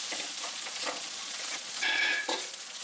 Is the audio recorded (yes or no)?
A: no